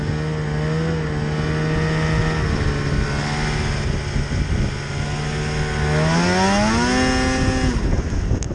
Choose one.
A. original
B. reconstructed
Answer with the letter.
A